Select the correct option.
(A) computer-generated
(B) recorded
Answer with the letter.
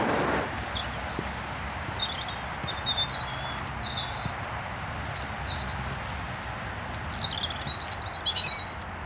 B